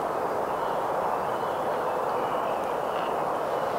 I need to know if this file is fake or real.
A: real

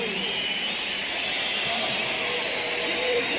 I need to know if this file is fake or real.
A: real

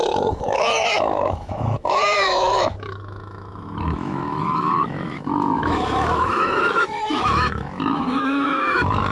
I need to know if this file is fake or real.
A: fake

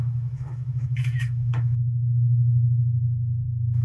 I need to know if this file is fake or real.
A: fake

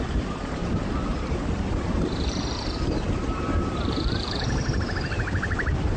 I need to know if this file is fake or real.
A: fake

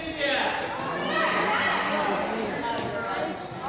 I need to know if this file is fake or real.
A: real